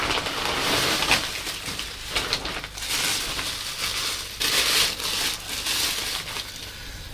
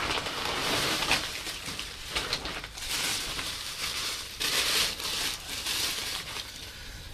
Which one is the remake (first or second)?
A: second